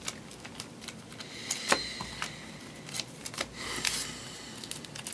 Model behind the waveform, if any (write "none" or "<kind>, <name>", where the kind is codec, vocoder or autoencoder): none